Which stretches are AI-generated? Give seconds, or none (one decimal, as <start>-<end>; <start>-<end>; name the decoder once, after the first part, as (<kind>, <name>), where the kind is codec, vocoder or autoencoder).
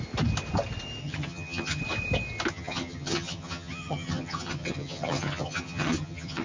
1.0-1.8 (vocoder, HiFi-GAN); 2.5-6.4